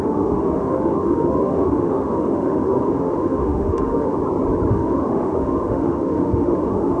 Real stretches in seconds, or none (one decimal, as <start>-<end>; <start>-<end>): 4.2-4.7